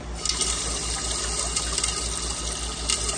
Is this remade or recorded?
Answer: recorded